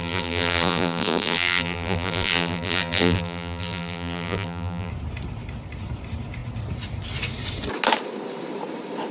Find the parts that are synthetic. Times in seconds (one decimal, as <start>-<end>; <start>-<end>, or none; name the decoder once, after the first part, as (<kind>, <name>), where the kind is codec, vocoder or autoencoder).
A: 0.0-4.9 (vocoder, BigVGAN v2)